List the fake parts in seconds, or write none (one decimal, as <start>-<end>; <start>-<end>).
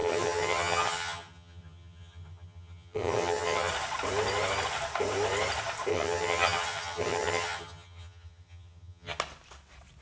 0.0-3.7; 5.9-9.2